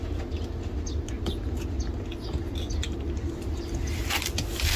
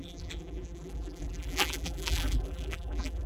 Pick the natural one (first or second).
first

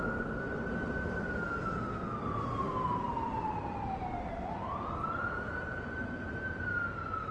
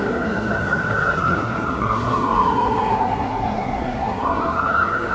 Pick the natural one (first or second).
first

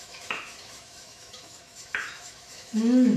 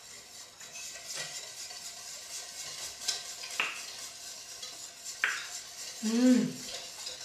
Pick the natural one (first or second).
second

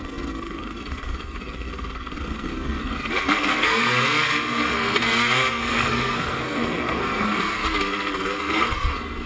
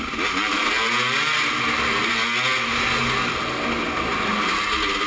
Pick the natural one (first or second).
second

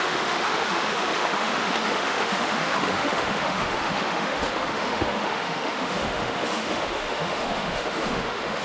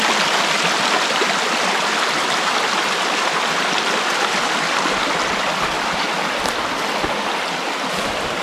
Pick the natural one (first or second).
second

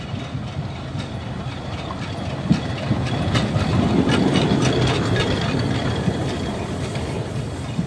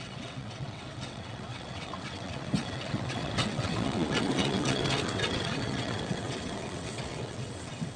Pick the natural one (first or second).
first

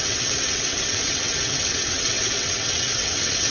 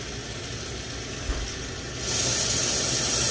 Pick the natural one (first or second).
second